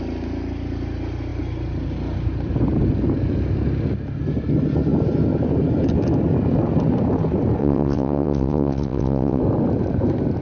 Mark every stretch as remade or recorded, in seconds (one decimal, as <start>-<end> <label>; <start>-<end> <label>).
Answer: 0.0-7.6 recorded; 7.6-9.4 remade; 9.4-10.4 recorded